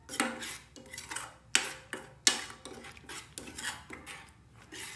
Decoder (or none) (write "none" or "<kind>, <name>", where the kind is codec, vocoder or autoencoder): none